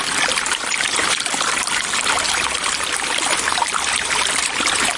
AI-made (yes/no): yes